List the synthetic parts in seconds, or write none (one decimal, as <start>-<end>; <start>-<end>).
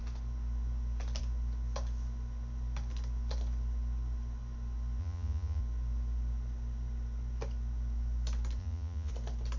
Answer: 5.0-5.6; 8.6-9.1